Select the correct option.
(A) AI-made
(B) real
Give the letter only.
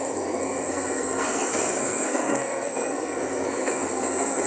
A